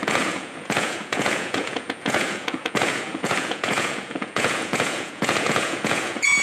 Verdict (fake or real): fake